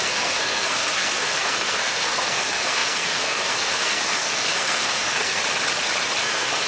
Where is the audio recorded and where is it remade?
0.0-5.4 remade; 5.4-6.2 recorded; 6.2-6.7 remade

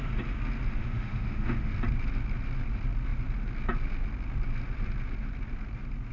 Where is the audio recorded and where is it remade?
0.0-0.8 recorded; 0.8-1.7 remade; 1.7-6.1 recorded

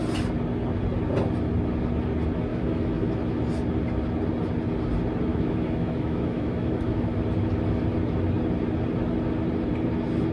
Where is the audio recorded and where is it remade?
0.0-2.5 recorded; 2.5-3.4 remade; 3.4-5.3 recorded; 5.3-7.2 remade; 7.2-10.3 recorded